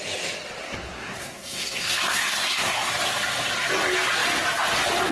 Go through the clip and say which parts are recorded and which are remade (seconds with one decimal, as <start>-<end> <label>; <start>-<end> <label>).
0.0-0.6 recorded; 0.6-2.9 remade; 2.9-5.1 recorded